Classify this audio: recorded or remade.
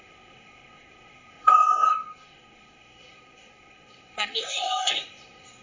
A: remade